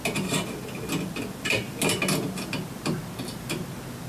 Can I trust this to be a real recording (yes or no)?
yes